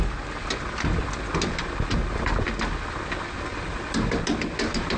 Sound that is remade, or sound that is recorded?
recorded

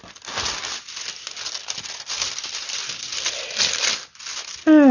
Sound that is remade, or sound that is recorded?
recorded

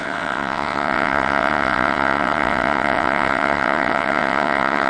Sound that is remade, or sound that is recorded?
remade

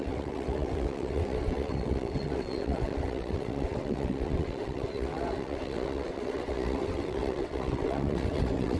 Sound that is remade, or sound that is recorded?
remade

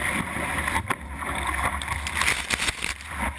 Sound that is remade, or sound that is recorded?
recorded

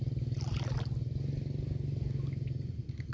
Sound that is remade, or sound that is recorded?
recorded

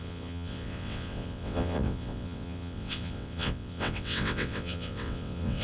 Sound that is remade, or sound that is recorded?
remade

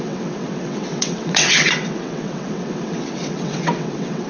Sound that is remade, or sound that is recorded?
remade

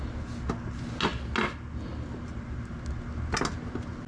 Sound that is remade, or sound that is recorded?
recorded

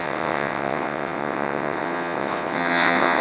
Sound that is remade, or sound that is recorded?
remade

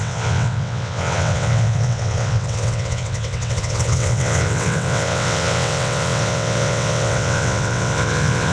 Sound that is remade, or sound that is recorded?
remade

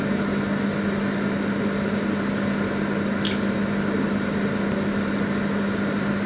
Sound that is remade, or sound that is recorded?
recorded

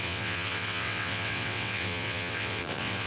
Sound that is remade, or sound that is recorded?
remade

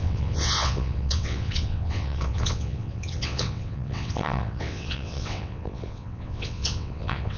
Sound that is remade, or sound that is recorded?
remade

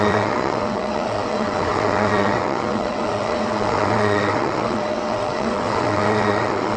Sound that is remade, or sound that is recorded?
remade